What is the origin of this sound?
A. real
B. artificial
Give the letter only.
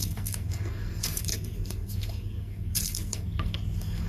B